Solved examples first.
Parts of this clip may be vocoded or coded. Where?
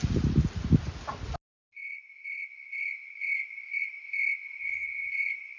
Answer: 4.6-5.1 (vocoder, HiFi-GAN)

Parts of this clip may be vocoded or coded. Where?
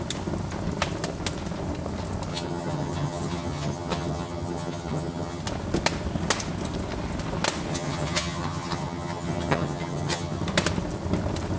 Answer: 2.3-5.4 (vocoder, HiFi-GAN); 7.7-10.4